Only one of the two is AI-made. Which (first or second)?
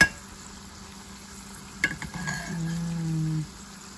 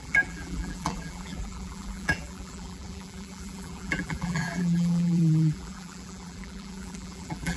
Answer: second